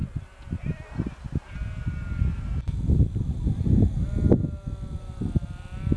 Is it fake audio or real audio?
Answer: real